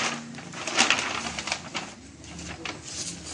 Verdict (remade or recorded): recorded